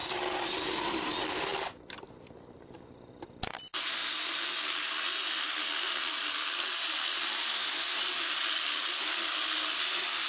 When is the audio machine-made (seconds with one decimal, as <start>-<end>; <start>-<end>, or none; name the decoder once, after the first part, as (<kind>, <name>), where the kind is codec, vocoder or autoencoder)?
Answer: 0.0-1.1 (vocoder, BigVGAN v2)